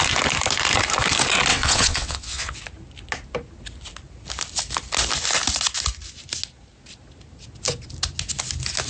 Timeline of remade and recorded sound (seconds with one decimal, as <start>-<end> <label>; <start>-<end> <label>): 0.0-1.5 recorded; 1.5-2.6 remade; 2.6-8.9 recorded